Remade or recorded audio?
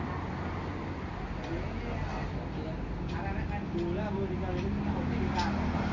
recorded